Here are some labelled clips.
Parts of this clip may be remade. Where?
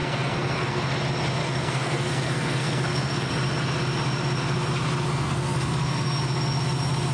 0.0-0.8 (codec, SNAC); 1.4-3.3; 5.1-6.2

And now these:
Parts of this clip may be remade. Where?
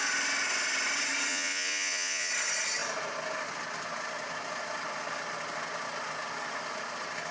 1.3-2.3 (vocoder, Vocos)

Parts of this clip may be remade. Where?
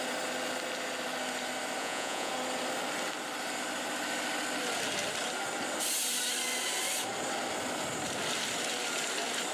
1.8-2.3 (vocoder, Vocos)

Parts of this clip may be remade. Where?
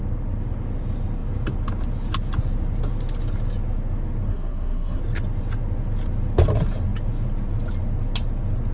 4.3-5.0 (codec, SNAC)